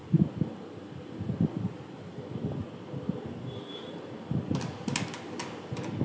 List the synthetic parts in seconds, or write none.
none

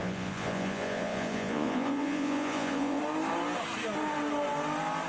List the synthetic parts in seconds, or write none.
0.0-3.0 (vocoder, Vocos)

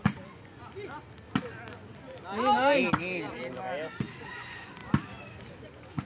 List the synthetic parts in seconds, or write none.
0.0-0.6 (vocoder, Vocos); 4.2-4.8; 5.6-6.0

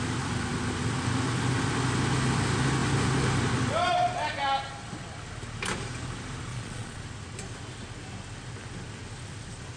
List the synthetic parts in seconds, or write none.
6.5-7.0 (vocoder, Vocos)

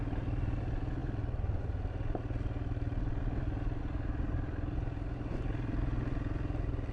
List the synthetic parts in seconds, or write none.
none

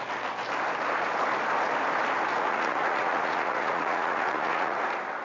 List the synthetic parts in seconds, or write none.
2.3-4.8 (vocoder, Vocos)

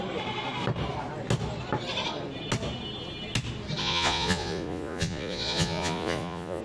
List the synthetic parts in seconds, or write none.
3.8-6.6 (vocoder, Vocos)

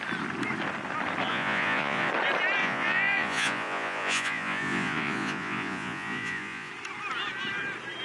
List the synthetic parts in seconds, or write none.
1.3-2.1 (vocoder, Vocos); 2.6-6.7